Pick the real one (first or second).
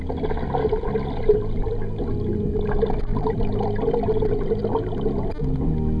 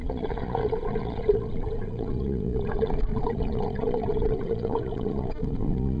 first